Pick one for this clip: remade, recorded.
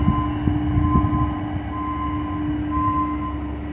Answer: recorded